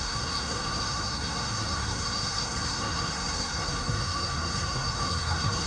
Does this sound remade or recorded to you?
remade